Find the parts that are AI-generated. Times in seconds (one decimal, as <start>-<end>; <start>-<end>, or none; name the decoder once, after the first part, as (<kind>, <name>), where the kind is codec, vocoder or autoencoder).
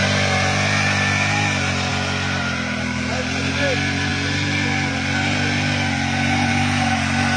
none